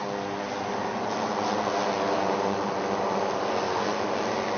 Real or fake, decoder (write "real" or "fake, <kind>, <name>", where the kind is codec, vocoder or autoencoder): real